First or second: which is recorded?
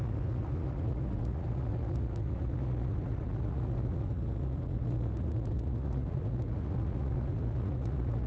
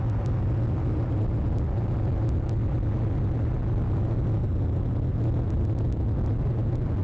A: second